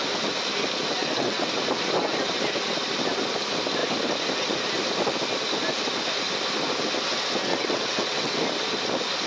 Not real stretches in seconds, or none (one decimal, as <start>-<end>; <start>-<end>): 1.0-1.5; 7.5-8.4